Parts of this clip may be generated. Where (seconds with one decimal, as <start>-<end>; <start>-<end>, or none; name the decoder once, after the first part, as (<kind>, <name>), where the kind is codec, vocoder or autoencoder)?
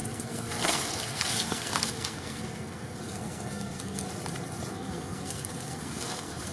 0.0-4.1 (codec, SNAC); 4.7-6.5